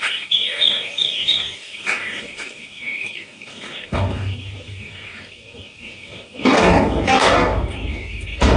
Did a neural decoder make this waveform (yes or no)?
yes